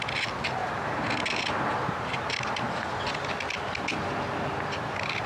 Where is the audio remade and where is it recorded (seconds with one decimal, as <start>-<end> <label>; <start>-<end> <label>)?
0.0-5.3 recorded